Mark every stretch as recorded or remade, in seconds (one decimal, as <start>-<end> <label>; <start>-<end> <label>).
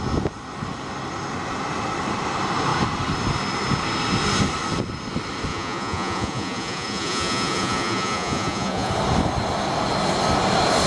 0.0-5.5 recorded; 5.5-8.9 remade; 8.9-10.9 recorded